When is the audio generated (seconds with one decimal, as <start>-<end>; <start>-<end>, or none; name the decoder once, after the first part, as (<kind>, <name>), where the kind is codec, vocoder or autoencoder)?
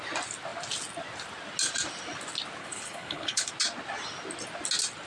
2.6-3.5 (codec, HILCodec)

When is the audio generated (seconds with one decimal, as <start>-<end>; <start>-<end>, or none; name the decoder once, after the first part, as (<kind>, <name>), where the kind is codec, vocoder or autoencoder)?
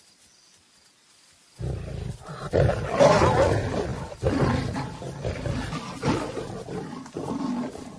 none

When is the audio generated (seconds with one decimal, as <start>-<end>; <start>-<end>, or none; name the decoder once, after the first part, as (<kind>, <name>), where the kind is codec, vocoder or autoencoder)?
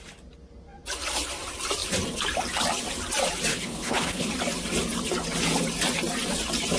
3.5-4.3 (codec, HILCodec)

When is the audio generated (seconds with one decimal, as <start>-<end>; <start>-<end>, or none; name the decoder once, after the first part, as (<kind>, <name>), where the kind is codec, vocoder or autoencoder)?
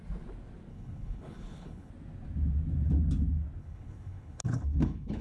0.7-1.9 (codec, HILCodec); 3.6-5.2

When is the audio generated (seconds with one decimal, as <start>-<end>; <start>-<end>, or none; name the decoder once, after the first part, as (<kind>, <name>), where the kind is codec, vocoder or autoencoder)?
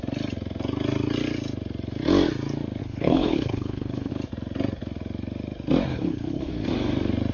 2.8-4.1 (codec, HILCodec); 5.9-6.5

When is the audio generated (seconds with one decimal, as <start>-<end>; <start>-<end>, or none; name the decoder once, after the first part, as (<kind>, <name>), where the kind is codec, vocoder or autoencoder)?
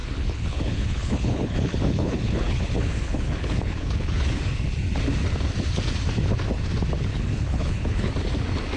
0.0-4.4 (codec, HILCodec); 7.1-8.1